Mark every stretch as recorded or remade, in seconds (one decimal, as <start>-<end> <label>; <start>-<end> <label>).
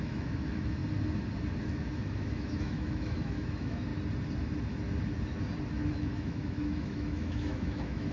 0.0-0.8 remade; 0.8-1.6 recorded; 1.6-3.9 remade; 3.9-5.9 recorded; 5.9-8.1 remade